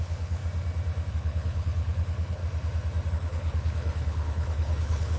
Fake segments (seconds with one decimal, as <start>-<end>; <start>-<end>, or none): 0.0-0.4; 1.1-2.4; 3.1-5.2